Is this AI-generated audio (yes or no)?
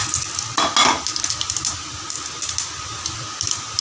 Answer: no